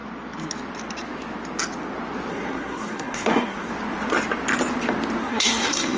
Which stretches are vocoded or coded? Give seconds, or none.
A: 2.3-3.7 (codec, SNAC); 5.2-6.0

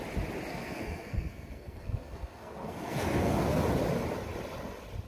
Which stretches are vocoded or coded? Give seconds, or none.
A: 0.5-3.6 (codec, SNAC)

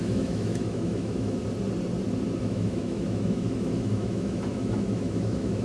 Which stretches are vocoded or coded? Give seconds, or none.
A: 0.0-1.4 (autoencoder, DAC-VAE); 2.4-5.6

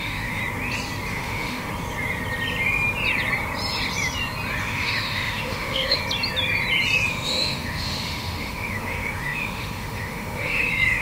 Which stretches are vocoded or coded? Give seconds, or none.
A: 0.0-0.4 (autoencoder, DAC-VAE); 1.1-1.7; 4.6-6.0; 7.1-11.0

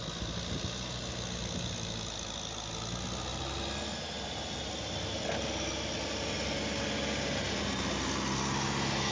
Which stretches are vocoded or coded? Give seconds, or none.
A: none

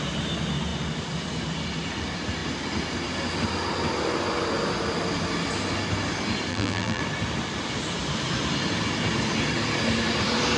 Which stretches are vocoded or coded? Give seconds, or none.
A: 6.5-7.0 (vocoder, BigVGAN v2)

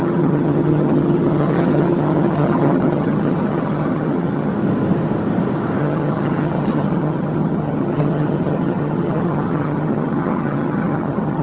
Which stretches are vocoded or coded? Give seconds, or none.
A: 0.0-4.5 (vocoder, HiFi-GAN); 5.8-11.4